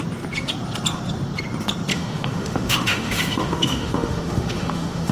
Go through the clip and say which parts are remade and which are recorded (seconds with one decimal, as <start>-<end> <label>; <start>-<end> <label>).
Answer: 0.0-1.9 recorded; 1.9-5.1 remade